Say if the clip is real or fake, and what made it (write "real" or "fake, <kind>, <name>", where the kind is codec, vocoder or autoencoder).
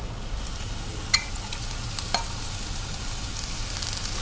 real